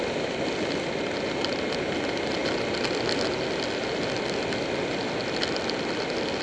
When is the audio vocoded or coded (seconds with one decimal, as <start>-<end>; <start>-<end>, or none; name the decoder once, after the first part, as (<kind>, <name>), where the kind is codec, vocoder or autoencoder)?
none